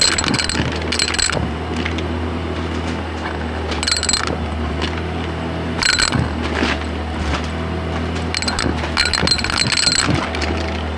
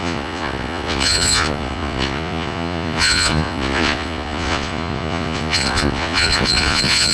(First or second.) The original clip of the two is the first